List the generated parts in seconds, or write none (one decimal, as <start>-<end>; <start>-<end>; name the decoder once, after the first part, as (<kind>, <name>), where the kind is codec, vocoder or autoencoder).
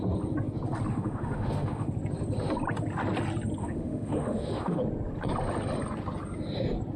0.9-1.9 (autoencoder, DAC-VAE); 3.6-4.8